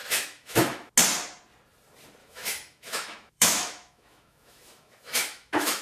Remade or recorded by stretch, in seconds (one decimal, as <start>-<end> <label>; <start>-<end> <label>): 0.0-0.9 remade; 0.9-2.2 recorded; 2.2-5.8 remade